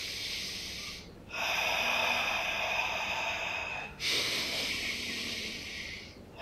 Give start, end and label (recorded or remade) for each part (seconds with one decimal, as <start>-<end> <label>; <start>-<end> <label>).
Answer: 0.0-3.7 recorded; 3.7-4.7 remade; 4.7-6.4 recorded

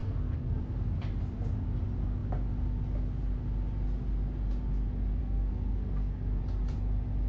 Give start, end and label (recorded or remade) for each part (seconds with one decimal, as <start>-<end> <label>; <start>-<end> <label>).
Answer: 0.0-0.6 remade; 0.6-5.2 recorded; 5.2-6.4 remade; 6.4-7.3 recorded

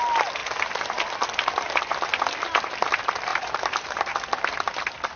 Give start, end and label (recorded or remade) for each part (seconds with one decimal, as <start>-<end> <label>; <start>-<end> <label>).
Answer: 0.0-3.3 recorded; 3.3-4.1 remade; 4.1-5.2 recorded

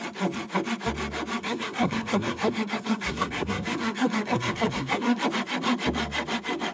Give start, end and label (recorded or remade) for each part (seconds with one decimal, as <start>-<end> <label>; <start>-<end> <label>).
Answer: 0.0-1.4 recorded; 1.4-5.2 remade; 5.2-6.7 recorded